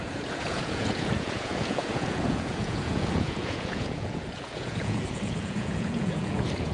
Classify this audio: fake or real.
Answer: fake